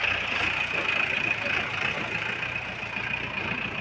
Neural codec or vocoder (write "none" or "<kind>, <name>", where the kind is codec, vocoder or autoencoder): none